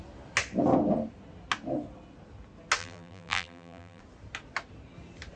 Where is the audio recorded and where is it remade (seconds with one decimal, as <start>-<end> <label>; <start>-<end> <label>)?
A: 0.0-2.8 recorded; 2.8-4.0 remade; 4.0-5.4 recorded